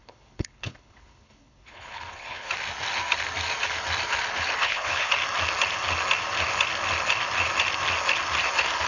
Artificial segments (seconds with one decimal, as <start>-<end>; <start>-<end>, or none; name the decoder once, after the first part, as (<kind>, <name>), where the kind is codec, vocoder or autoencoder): 0.0-2.5 (codec, HILCodec); 4.6-5.1